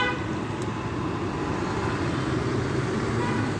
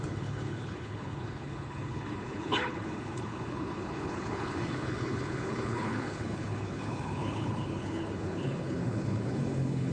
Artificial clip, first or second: second